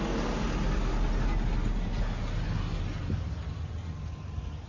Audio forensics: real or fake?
real